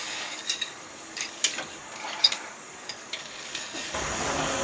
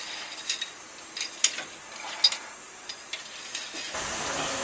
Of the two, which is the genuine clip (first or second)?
second